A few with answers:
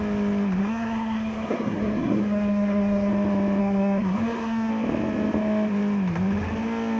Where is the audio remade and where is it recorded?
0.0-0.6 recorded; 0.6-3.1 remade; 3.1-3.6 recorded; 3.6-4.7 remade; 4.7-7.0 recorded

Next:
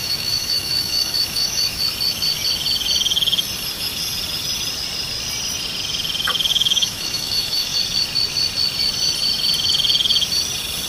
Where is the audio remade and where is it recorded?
0.0-1.8 remade; 1.8-6.5 recorded; 6.5-7.8 remade; 7.8-10.9 recorded

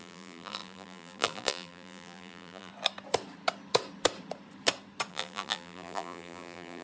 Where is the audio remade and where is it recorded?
0.0-2.7 remade; 2.7-5.1 recorded; 5.1-6.8 remade

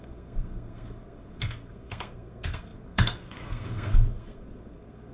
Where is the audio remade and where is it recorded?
0.0-5.1 remade

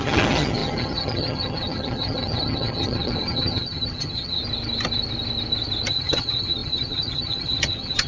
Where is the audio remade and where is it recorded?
0.0-4.4 remade; 4.4-5.9 recorded; 5.9-8.1 remade